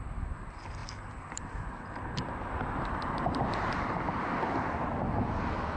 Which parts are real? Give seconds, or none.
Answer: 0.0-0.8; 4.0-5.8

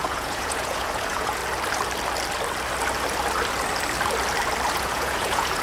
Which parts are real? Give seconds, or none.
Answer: 1.4-4.7

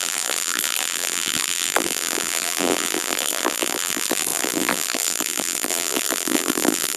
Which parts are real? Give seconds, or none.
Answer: none

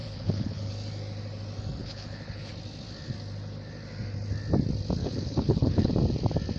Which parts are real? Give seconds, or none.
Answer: 0.7-1.8; 2.5-5.0; 5.9-6.6

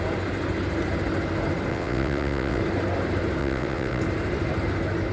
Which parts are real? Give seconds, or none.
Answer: 0.0-1.7; 2.6-3.4; 4.0-5.1

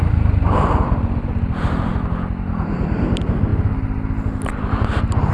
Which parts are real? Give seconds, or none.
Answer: 1.9-2.7; 3.5-5.3